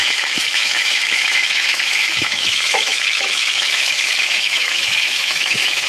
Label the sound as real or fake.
fake